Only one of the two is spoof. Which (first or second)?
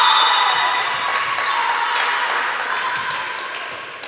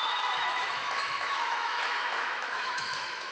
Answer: second